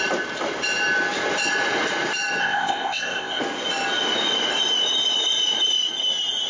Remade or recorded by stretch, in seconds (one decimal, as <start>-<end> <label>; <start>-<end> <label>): 0.0-2.4 recorded; 2.4-3.4 remade; 3.4-6.5 recorded